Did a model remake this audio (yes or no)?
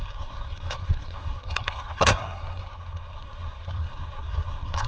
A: yes